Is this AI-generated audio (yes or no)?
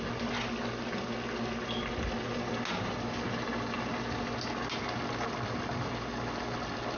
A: no